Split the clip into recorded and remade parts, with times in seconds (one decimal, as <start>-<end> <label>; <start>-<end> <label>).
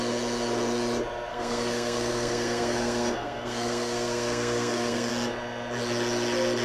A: 0.0-1.3 recorded; 1.3-5.1 remade; 5.1-6.6 recorded